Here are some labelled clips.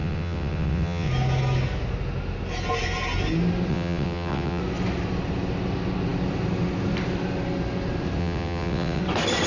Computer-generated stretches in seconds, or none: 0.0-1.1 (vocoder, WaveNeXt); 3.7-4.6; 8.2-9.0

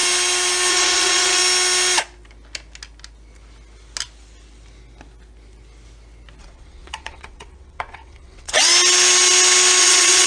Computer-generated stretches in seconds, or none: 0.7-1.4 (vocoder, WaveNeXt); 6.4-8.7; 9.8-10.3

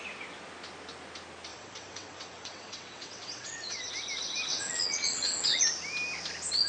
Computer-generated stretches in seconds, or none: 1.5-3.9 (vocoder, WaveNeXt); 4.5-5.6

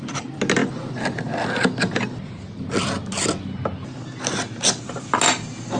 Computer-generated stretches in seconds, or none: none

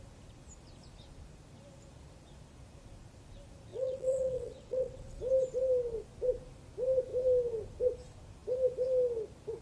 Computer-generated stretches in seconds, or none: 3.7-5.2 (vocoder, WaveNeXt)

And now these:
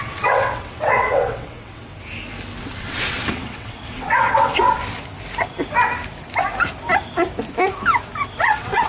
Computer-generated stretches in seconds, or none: 0.0-1.9 (vocoder, WaveNeXt); 2.6-4.8; 8.4-8.9

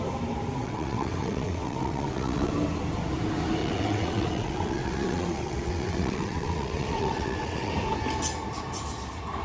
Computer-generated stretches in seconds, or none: 0.6-2.5 (vocoder, WaveNeXt); 3.6-7.7

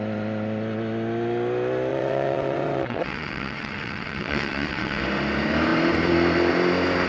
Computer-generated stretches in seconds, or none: 1.9-5.0 (vocoder, WaveNeXt)